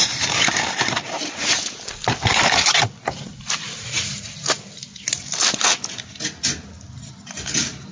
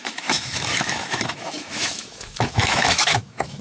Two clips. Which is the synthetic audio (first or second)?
second